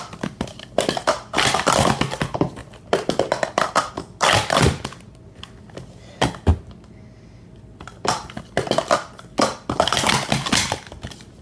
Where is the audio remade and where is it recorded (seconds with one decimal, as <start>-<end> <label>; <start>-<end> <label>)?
0.0-11.4 recorded